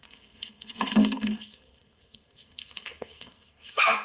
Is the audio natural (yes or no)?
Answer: no